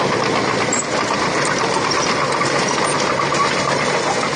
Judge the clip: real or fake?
real